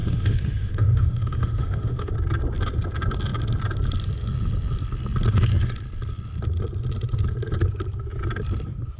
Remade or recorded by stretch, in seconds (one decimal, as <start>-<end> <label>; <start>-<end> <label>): 0.0-2.1 remade; 2.1-9.0 recorded